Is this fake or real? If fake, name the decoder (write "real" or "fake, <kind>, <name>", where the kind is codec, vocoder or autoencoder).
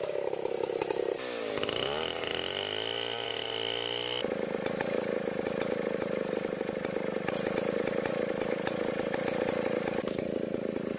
real